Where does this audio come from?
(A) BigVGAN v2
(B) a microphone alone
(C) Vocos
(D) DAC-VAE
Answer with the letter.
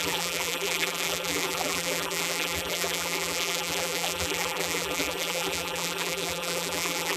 A